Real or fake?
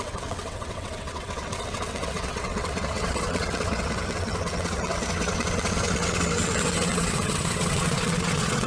fake